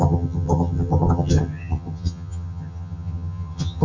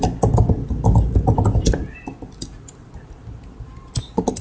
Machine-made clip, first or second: first